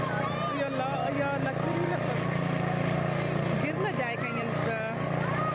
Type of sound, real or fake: real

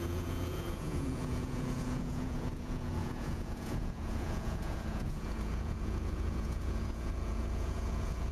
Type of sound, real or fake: fake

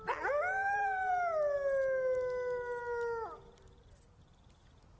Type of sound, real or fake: real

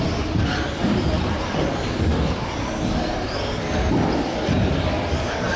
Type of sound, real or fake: real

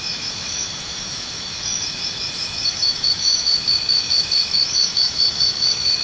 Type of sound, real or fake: fake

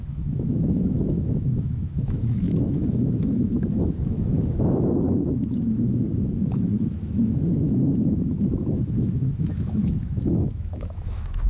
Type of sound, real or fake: fake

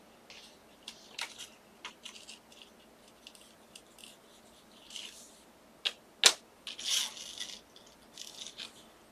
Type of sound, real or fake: real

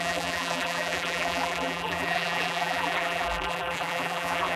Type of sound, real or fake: fake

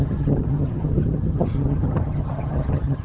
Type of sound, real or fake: fake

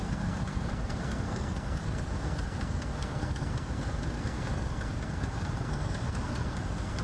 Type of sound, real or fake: fake